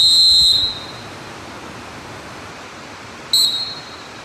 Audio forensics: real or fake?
real